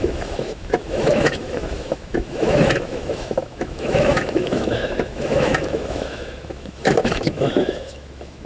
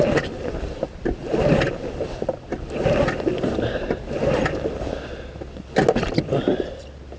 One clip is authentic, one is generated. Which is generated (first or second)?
first